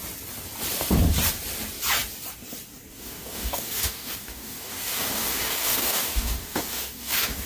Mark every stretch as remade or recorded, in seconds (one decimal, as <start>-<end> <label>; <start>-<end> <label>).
0.0-2.9 recorded; 2.9-7.5 remade